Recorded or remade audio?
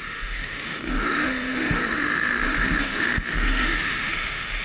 remade